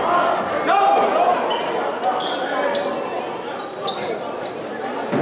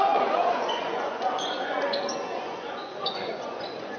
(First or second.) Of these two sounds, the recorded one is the first